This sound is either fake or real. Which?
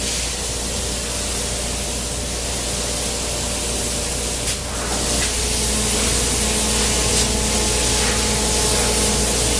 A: real